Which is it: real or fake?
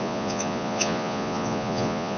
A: fake